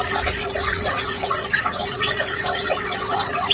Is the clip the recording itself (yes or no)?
no